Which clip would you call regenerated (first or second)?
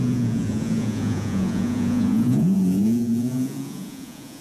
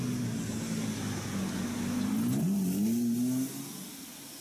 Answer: first